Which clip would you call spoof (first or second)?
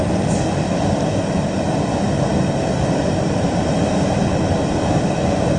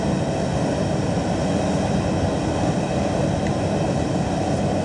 first